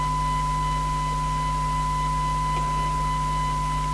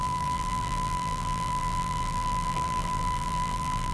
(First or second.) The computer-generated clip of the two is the second